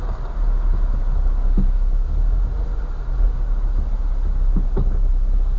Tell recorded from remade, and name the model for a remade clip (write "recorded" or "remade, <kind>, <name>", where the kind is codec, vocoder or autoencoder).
recorded